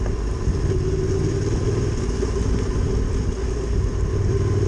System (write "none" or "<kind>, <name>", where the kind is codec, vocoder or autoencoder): none